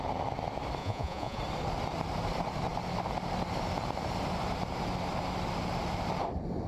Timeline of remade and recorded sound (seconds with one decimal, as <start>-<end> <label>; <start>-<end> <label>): 0.0-0.8 recorded; 0.8-1.4 remade; 1.4-6.7 recorded